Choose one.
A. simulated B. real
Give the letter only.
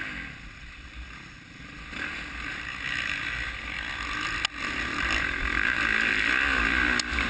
B